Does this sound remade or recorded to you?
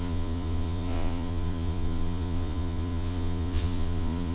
remade